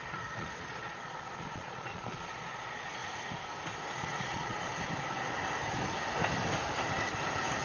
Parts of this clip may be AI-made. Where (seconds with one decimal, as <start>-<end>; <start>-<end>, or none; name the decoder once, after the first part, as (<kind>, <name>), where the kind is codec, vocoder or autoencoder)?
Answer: 0.0-3.0 (vocoder, Vocos); 3.9-4.7